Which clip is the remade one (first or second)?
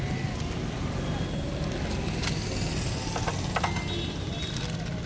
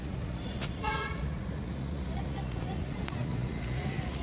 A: second